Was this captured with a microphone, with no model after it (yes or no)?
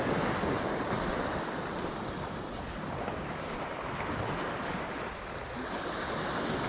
yes